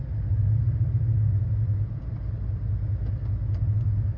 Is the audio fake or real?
real